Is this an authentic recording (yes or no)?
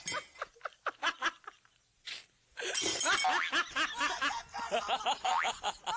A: yes